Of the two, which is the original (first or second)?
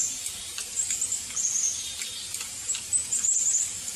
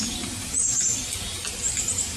second